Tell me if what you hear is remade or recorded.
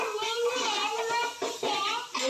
recorded